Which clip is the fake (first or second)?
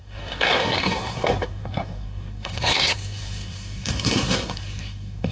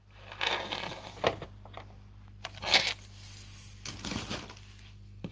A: first